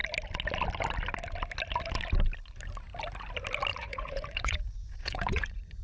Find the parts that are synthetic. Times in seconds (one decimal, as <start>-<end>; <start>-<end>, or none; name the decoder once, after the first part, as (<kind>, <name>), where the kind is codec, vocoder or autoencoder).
3.7-5.8 (vocoder, Vocos)